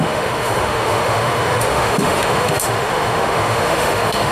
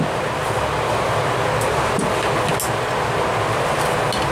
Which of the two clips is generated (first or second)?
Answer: first